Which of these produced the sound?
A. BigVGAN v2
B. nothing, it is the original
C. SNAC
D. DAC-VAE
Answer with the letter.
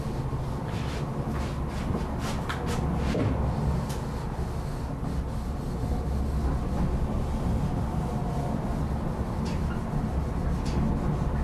B